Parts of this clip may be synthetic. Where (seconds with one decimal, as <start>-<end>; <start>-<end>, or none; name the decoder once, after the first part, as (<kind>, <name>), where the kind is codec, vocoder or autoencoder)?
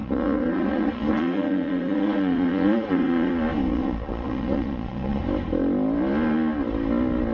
0.0-3.3 (vocoder, Vocos); 3.7-5.2